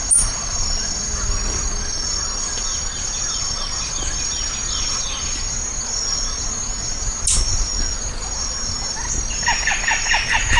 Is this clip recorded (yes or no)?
yes